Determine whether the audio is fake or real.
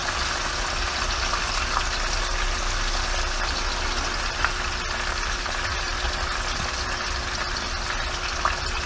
real